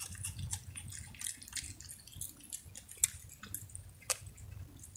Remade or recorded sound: recorded